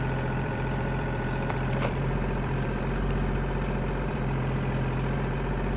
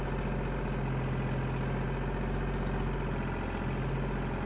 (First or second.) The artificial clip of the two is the first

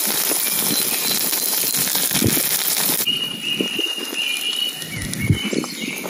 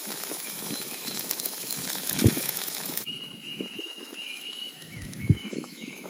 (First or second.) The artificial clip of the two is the second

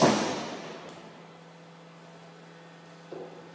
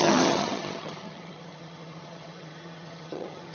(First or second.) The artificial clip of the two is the second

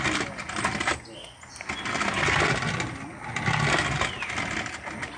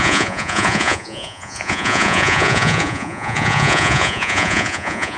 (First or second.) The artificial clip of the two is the second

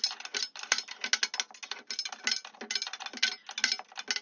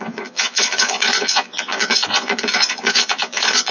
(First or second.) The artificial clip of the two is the second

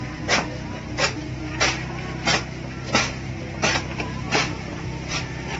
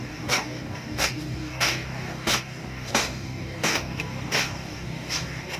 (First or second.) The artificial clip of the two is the second